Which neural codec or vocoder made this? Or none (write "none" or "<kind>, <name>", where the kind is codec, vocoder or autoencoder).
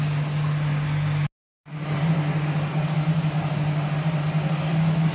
none